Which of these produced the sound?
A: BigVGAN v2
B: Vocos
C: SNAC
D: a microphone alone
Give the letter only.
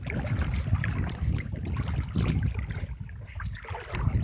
D